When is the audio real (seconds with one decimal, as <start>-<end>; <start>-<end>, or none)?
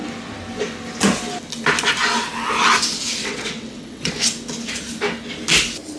0.0-3.2; 4.1-6.0